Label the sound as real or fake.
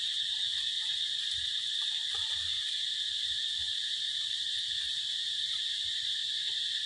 fake